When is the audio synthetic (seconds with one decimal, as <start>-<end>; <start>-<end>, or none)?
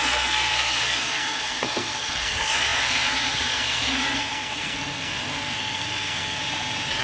0.0-6.4